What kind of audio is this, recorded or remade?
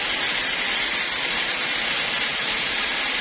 recorded